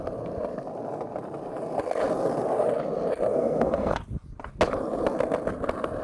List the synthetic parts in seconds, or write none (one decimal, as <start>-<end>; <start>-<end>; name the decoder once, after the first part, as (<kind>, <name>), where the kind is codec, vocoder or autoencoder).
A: 3.3-4.0 (codec, SNAC)